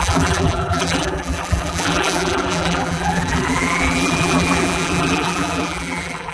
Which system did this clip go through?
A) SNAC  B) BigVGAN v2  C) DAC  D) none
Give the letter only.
B